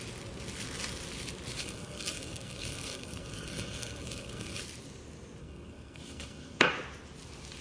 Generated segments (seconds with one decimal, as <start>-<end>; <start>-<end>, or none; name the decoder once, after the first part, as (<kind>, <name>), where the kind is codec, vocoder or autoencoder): 1.6-4.6 (codec, SNAC); 5.4-6.7